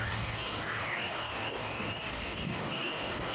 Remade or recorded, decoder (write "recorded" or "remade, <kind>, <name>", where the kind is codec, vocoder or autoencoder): remade, codec, DAC